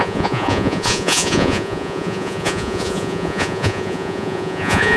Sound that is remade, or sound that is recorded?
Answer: remade